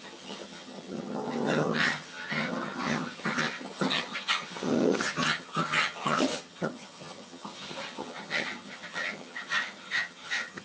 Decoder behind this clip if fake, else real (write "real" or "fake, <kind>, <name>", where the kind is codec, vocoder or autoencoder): fake, vocoder, HiFi-GAN